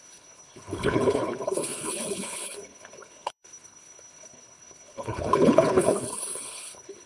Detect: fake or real fake